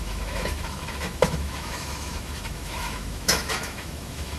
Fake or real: fake